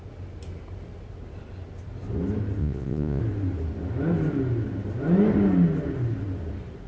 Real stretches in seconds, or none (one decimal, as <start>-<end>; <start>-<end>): 0.0-2.6; 3.2-6.9